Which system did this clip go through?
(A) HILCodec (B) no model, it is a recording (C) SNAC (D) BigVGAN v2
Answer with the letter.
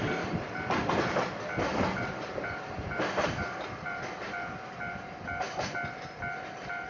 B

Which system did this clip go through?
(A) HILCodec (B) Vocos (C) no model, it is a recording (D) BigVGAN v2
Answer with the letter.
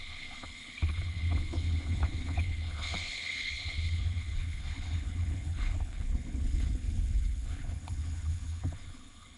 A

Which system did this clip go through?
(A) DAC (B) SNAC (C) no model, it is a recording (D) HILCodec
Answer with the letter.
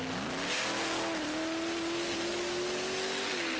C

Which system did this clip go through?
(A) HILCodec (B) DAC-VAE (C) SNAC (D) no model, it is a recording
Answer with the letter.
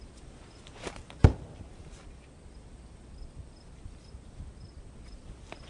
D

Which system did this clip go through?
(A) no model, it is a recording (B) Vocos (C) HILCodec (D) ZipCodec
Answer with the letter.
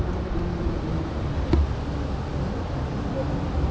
A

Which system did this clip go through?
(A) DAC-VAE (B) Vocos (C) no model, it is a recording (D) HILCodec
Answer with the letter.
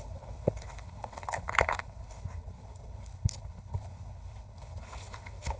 D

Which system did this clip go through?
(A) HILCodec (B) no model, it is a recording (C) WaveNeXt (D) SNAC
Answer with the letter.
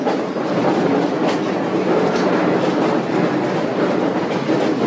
B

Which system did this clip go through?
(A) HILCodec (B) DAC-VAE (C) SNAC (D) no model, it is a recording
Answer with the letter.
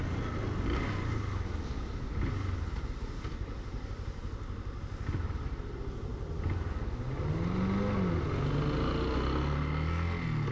D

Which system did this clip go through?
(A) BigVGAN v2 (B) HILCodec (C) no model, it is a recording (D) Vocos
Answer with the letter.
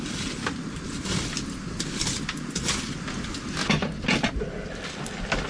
C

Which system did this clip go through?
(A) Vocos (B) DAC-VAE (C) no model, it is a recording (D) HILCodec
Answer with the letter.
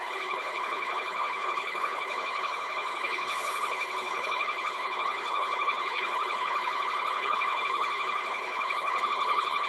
D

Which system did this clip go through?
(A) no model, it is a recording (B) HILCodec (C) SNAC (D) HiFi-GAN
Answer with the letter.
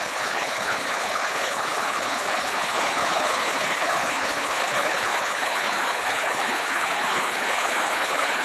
B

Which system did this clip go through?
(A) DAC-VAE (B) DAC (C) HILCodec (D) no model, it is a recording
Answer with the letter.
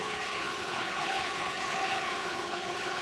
C